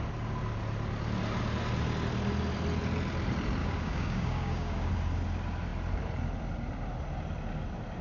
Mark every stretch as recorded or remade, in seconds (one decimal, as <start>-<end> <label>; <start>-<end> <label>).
0.0-3.6 recorded; 3.6-4.9 remade; 4.9-8.0 recorded